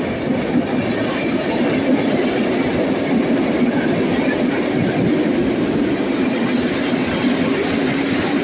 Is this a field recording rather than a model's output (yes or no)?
yes